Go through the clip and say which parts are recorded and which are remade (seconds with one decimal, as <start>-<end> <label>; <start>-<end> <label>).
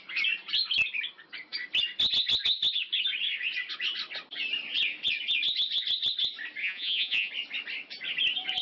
0.0-6.6 recorded; 6.6-7.3 remade; 7.3-8.6 recorded